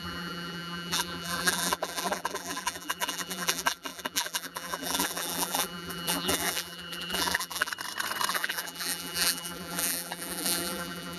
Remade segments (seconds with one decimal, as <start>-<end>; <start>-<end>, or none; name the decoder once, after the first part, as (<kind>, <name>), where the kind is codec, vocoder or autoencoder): 0.0-7.7 (vocoder, BigVGAN v2); 8.3-11.2